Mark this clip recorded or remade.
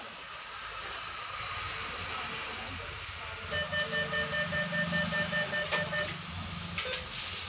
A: recorded